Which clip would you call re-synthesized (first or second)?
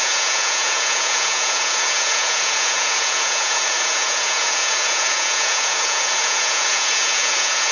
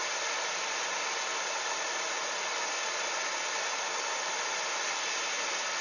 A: first